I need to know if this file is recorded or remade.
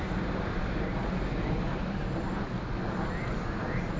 recorded